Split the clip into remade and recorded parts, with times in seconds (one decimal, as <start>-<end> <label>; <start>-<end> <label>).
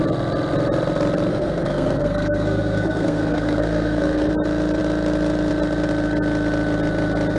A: 0.0-1.3 recorded; 1.3-4.3 remade; 4.3-7.4 recorded